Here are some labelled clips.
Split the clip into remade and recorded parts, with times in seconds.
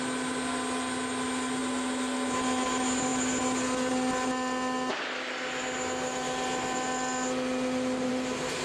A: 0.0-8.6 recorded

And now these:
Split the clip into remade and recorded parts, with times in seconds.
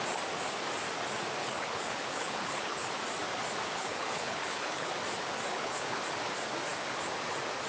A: 0.0-1.4 recorded; 1.4-3.0 remade; 3.0-3.8 recorded; 3.8-4.9 remade; 4.9-5.5 recorded; 5.5-6.0 remade; 6.0-7.7 recorded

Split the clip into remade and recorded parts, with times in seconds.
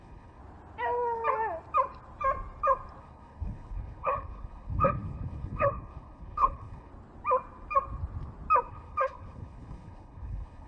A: 0.0-0.4 remade; 0.4-3.0 recorded; 3.0-6.9 remade; 6.9-8.7 recorded; 8.7-10.7 remade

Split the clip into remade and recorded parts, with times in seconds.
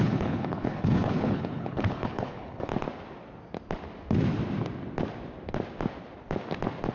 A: 0.0-2.7 remade; 2.7-6.9 recorded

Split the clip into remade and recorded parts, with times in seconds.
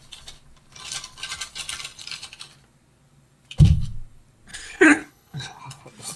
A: 0.0-4.5 recorded; 4.5-5.6 remade; 5.6-6.2 recorded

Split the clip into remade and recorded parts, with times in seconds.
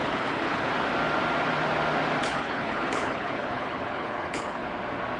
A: 0.0-0.7 remade; 0.7-2.2 recorded; 2.2-4.7 remade; 4.7-5.2 recorded